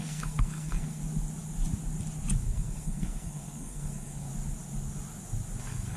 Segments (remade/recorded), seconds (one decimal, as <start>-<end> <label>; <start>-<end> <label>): 0.0-1.0 remade; 1.0-2.4 recorded; 2.4-4.3 remade; 4.3-5.6 recorded; 5.6-6.0 remade